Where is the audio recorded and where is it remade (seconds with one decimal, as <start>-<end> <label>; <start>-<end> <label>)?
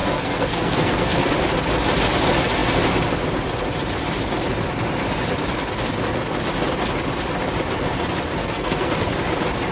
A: 0.0-1.2 remade; 1.2-8.4 recorded; 8.4-8.9 remade; 8.9-9.7 recorded